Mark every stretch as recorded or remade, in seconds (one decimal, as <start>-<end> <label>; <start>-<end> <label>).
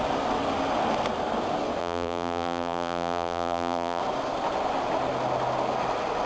0.0-1.8 recorded; 1.8-4.0 remade; 4.0-6.3 recorded